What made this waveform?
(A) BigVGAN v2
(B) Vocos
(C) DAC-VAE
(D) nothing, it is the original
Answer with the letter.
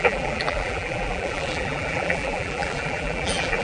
A